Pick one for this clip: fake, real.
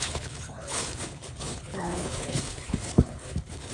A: fake